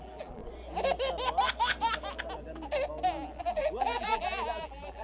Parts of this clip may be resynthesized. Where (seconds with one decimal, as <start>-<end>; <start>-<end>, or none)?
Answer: 0.0-0.4; 3.4-5.0